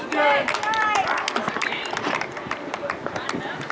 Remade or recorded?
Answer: recorded